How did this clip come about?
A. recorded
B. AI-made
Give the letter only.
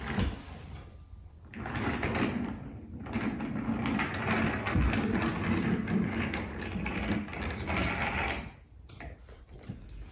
A